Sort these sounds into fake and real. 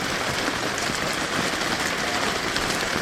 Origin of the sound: fake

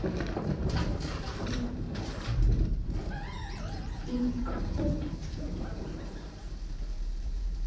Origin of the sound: fake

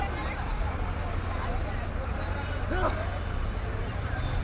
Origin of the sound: real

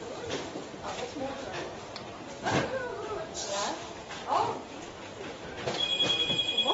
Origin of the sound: fake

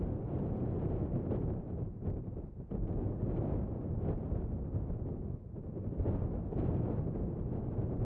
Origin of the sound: real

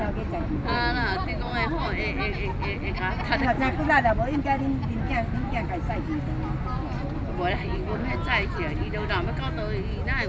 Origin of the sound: real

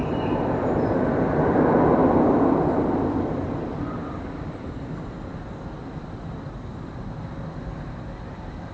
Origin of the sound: real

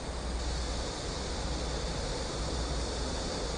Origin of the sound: real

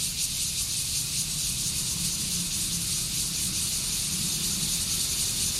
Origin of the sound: real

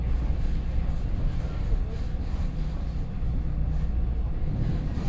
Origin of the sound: real